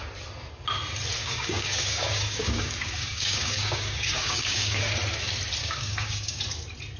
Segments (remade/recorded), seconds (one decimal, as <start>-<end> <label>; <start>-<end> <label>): 0.0-1.2 recorded; 1.2-4.8 remade; 4.8-5.6 recorded; 5.6-6.4 remade; 6.4-7.0 recorded